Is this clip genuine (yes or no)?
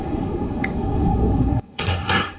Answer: no